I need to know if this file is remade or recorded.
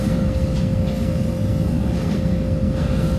remade